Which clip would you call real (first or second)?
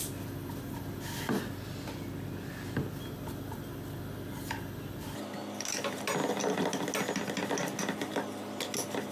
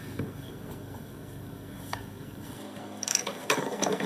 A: first